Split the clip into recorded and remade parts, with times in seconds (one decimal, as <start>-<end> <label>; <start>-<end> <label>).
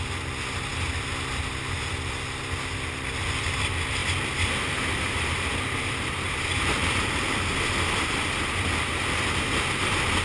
0.0-10.2 recorded